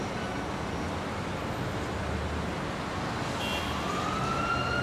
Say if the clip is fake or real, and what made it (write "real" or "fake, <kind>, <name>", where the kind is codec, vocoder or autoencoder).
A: real